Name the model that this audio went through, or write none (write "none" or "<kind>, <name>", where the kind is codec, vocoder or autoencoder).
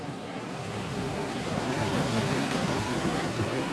codec, SNAC